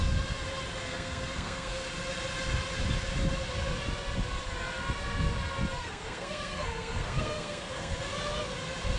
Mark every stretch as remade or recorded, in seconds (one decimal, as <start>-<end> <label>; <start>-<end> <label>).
0.0-0.8 recorded; 0.8-1.9 remade; 1.9-5.8 recorded; 5.8-7.9 remade; 7.9-9.0 recorded